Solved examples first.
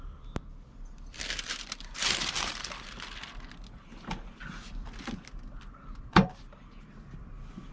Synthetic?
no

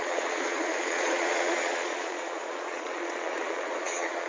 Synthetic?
yes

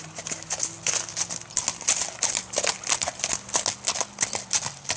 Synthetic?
no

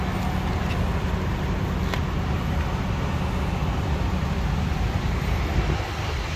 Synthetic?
no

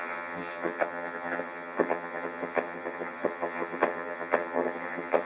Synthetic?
yes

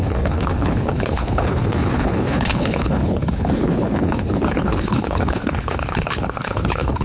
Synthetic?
yes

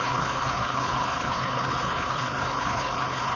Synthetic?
yes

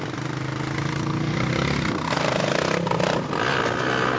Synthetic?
no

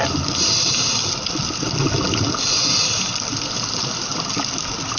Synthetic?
no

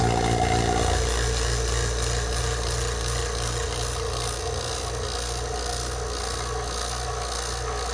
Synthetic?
no